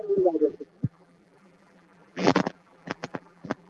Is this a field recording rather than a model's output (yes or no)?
no